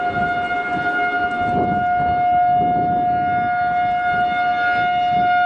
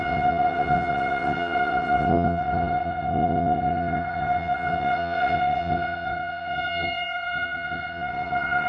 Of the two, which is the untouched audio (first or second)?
first